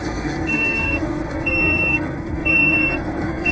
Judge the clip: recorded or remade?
remade